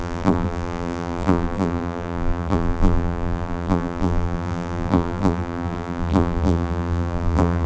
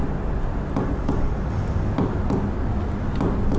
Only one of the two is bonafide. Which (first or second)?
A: second